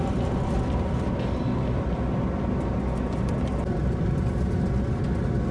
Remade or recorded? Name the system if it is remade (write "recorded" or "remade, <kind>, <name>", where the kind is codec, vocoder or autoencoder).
recorded